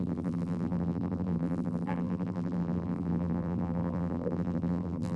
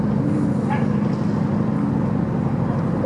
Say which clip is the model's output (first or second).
first